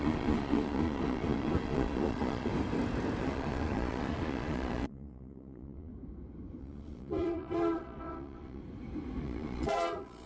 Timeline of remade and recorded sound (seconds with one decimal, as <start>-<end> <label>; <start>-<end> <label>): 0.0-2.5 remade; 2.5-3.2 recorded; 3.2-5.9 remade; 5.9-6.6 recorded; 6.6-8.6 remade; 8.6-9.2 recorded; 9.2-10.3 remade